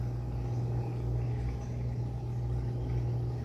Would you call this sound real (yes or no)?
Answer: yes